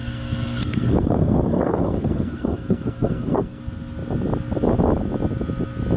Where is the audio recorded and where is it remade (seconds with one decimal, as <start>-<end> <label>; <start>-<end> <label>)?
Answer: 0.0-3.6 remade; 3.6-6.0 recorded